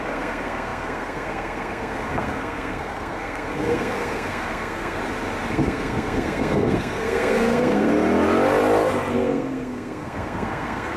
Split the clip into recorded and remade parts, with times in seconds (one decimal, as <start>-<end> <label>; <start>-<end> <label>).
0.0-5.0 remade; 5.0-5.5 recorded; 5.5-7.9 remade; 7.9-9.1 recorded; 9.1-11.0 remade